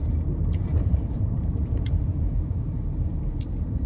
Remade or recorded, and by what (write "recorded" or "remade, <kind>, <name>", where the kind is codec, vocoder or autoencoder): remade, vocoder, BigVGAN v2